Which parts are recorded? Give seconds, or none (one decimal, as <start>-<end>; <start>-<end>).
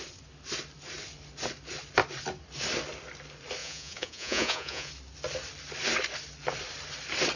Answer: 0.0-3.6; 4.9-7.4